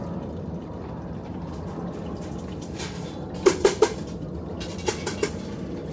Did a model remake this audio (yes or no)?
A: no